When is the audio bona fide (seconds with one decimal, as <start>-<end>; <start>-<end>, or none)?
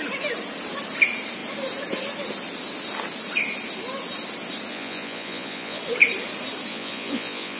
0.0-4.7; 5.8-6.7